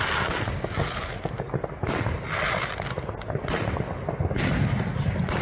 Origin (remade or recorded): recorded